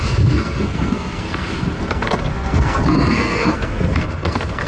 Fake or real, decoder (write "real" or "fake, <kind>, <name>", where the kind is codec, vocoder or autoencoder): fake, codec, SNAC